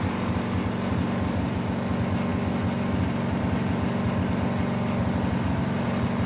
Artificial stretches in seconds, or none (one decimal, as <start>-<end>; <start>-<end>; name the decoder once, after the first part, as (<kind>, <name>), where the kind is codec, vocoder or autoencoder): none